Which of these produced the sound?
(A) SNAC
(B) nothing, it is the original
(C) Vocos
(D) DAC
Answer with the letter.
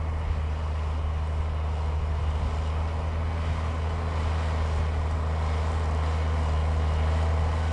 B